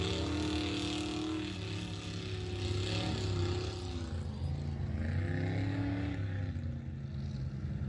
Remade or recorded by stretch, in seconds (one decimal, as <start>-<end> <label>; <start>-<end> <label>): 0.0-5.7 recorded; 5.7-6.4 remade; 6.4-7.9 recorded